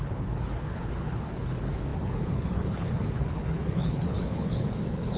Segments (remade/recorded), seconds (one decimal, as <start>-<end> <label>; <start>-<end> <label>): 0.0-5.2 remade

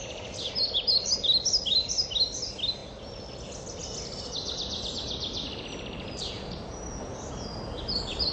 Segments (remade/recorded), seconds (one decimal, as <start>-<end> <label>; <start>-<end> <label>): 0.0-8.3 recorded